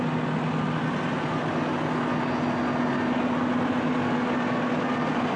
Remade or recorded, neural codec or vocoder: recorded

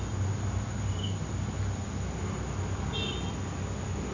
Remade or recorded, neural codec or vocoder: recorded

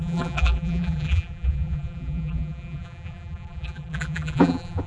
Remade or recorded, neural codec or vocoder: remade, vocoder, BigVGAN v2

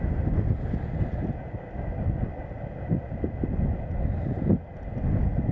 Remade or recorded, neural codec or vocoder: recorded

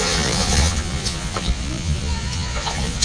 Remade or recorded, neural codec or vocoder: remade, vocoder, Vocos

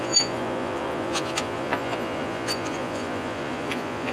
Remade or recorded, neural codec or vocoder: remade, vocoder, Vocos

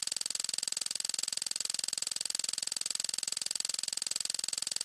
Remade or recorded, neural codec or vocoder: recorded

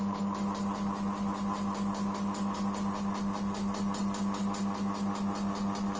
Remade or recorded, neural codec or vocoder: recorded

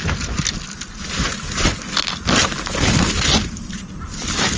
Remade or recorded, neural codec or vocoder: recorded